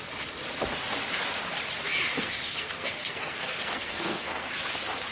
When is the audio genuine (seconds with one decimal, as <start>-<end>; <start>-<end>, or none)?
0.0-2.1; 4.5-5.1